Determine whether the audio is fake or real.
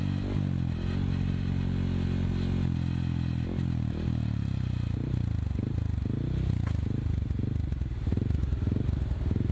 real